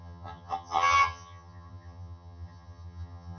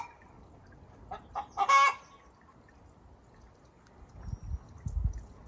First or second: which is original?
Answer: second